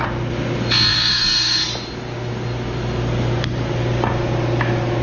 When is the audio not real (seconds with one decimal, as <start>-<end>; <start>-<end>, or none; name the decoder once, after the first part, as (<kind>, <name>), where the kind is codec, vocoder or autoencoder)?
0.9-1.6 (codec, DAC)